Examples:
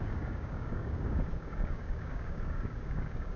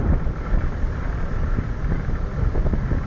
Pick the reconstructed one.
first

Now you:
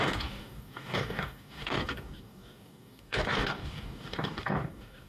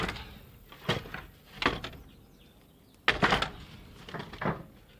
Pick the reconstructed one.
first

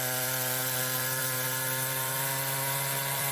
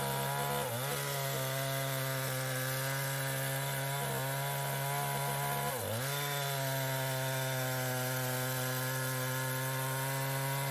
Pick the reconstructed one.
first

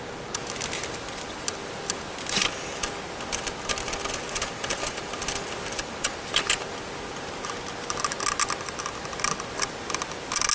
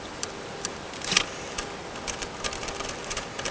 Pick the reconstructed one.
second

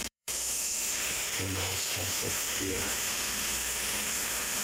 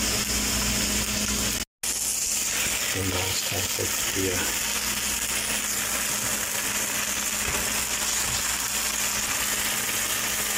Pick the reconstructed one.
first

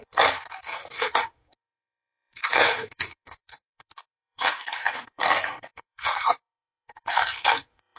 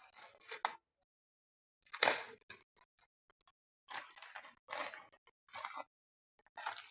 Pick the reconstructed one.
first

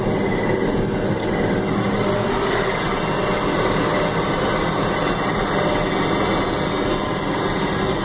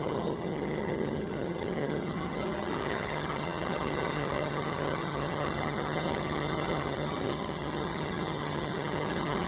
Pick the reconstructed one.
second